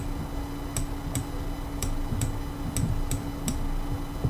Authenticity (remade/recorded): recorded